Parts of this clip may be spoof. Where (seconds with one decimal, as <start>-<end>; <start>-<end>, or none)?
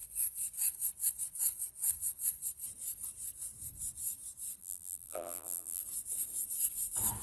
4.6-5.8